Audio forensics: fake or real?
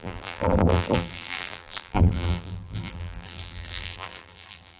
fake